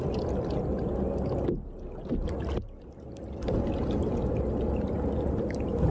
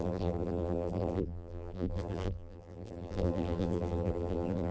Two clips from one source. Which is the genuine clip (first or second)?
first